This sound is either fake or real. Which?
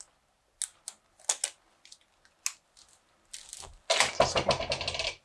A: real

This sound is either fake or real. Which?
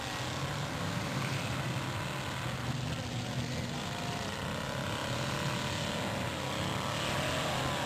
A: real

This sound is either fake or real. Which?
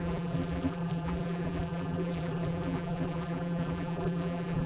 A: fake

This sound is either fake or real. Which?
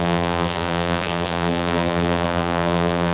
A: fake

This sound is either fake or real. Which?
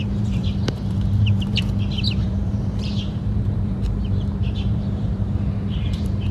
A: fake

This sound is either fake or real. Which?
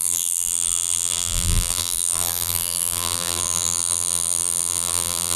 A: fake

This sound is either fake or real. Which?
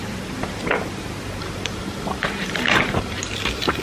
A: fake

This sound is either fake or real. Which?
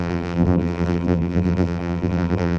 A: fake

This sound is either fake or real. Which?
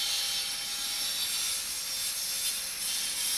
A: real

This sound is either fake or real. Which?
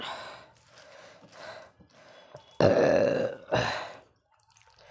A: real